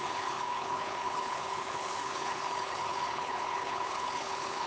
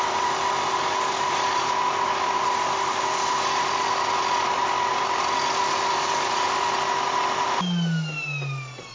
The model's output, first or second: first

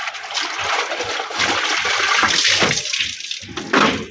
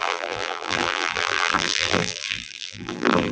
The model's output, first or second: second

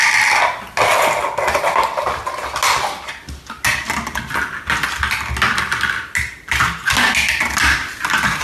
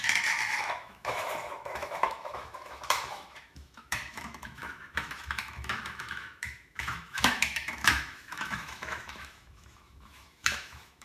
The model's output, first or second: second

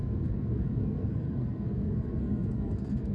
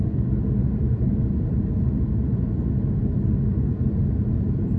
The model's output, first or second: first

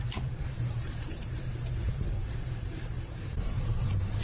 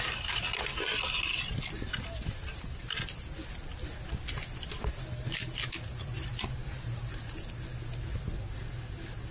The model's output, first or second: first